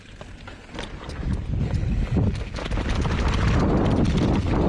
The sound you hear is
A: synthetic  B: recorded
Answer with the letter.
B